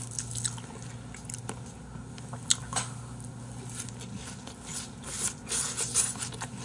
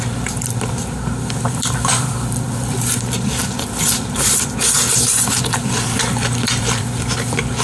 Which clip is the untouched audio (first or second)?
first